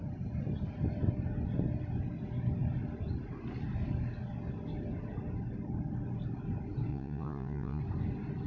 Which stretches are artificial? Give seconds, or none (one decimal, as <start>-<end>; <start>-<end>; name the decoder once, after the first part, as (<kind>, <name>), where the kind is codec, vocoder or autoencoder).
6.9-7.8 (vocoder, Vocos)